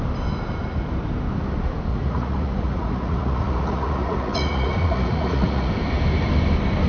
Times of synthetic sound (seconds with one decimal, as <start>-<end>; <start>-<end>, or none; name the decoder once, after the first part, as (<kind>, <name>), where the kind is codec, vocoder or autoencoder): 1.9-5.7 (vocoder, Vocos)